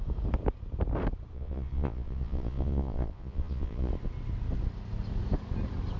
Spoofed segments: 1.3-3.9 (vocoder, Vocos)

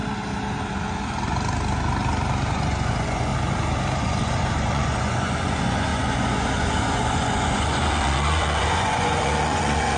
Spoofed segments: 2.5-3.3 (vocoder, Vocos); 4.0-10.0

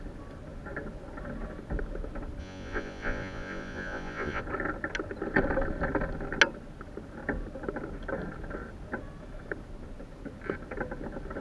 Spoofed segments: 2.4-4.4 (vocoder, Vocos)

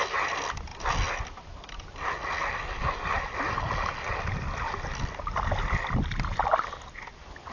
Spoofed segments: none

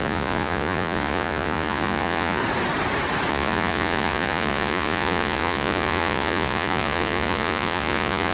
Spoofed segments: 0.0-2.4 (vocoder, Vocos); 3.3-8.3

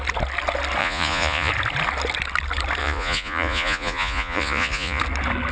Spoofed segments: 0.8-1.5 (vocoder, Vocos); 2.8-5.0